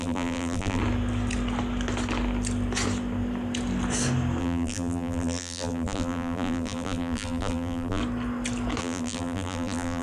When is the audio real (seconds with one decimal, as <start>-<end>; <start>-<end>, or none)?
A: 0.8-4.4; 8.0-8.8